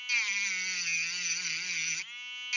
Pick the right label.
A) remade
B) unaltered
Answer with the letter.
B